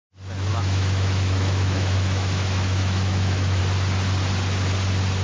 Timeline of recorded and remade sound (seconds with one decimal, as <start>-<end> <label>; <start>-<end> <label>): 0.0-0.5 recorded; 0.5-3.6 remade; 3.6-5.2 recorded